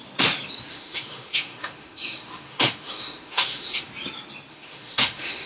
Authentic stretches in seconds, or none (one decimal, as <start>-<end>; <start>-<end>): 0.0-0.7; 3.9-4.5